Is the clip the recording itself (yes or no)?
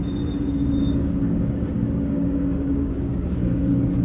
no